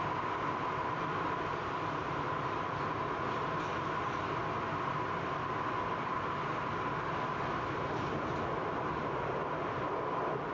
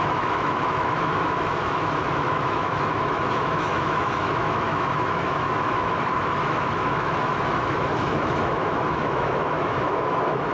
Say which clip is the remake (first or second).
second